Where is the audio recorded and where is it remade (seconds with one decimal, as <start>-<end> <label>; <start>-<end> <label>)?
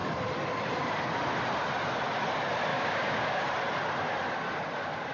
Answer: 0.0-2.7 recorded; 2.7-3.5 remade; 3.5-5.1 recorded